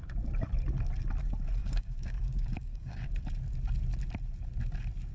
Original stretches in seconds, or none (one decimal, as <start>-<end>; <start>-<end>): 0.0-1.6; 3.1-5.1